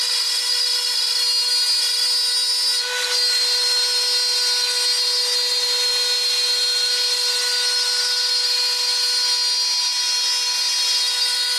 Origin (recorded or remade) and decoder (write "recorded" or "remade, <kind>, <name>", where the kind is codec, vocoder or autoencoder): recorded